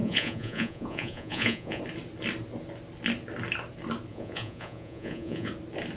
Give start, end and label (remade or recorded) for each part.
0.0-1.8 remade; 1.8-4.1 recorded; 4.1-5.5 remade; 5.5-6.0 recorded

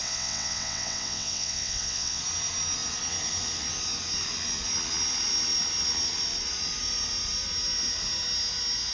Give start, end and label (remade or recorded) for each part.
0.0-2.2 remade; 2.2-8.9 recorded

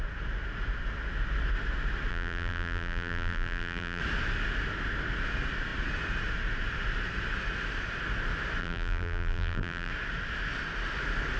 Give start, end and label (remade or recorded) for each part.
0.0-2.1 recorded; 2.1-4.0 remade; 4.0-8.6 recorded; 8.6-9.9 remade; 9.9-11.4 recorded

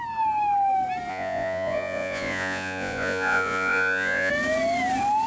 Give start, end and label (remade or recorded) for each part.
0.0-1.1 recorded; 1.1-4.3 remade; 4.3-5.3 recorded

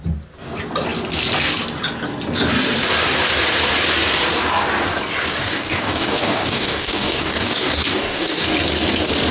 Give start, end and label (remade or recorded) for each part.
0.0-5.4 recorded; 5.4-8.5 remade; 8.5-9.3 recorded

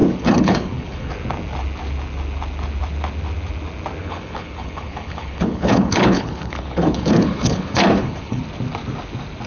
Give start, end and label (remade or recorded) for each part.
0.0-1.1 remade; 1.1-4.0 recorded; 4.0-8.4 remade; 8.4-9.5 recorded

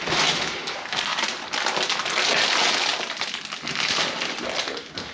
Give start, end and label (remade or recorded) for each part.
0.0-1.1 recorded; 1.1-1.7 remade; 1.7-5.1 recorded

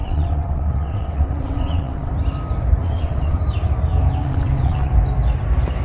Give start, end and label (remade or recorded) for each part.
0.0-2.1 remade; 2.1-2.8 recorded; 2.8-3.4 remade; 3.4-4.2 recorded; 4.2-4.9 remade; 4.9-5.8 recorded